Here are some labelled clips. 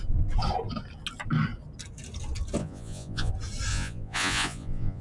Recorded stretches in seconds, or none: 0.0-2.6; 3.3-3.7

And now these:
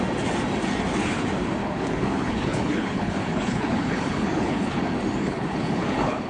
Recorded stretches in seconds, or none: 0.0-1.6; 4.8-5.2

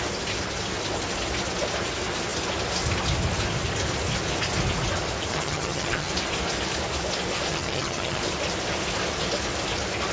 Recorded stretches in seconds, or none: 0.0-5.3; 6.1-7.5; 8.2-10.1

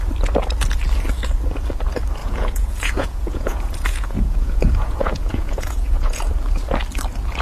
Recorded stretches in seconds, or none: 0.0-2.2; 6.2-7.4

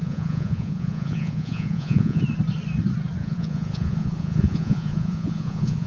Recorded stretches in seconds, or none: 2.2-3.2

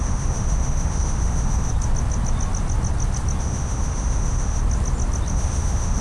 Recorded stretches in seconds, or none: 1.7-3.4; 4.6-5.3

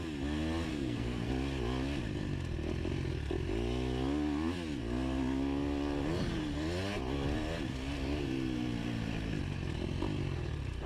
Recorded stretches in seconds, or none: 0.0-0.7; 1.3-10.9